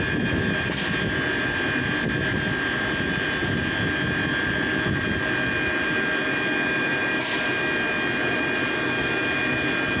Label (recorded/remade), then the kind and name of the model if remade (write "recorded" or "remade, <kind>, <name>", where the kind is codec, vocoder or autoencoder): recorded